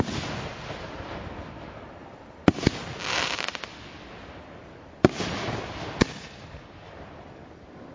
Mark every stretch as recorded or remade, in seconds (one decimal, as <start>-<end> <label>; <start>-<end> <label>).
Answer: 0.0-7.9 recorded